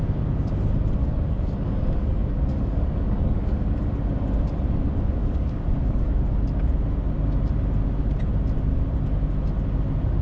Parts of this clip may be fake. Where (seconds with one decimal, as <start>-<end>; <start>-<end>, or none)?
1.0-3.8; 5.2-6.2